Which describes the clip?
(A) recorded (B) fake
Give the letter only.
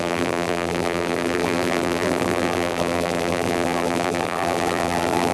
B